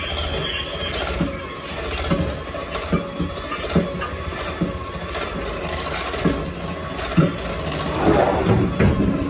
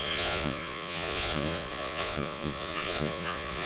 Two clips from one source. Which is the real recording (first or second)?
first